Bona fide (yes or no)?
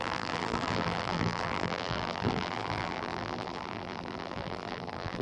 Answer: no